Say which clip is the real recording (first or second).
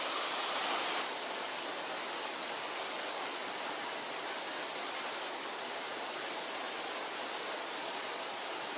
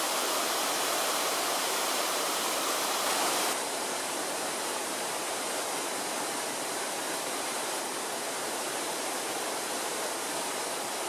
first